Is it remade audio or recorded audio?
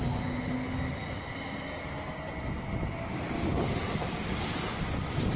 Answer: recorded